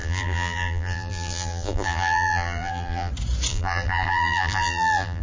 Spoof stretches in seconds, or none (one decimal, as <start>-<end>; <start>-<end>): 0.0-3.1; 3.5-5.2